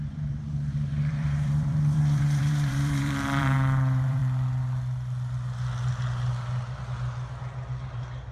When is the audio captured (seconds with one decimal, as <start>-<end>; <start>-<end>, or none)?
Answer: 4.2-7.8